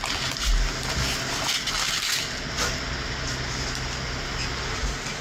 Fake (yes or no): no